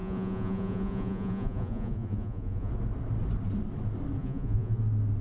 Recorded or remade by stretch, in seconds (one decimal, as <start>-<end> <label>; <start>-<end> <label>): 0.0-2.7 remade; 2.7-4.2 recorded; 4.2-4.8 remade; 4.8-5.2 recorded